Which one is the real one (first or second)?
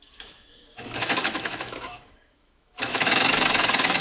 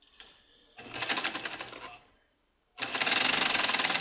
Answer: second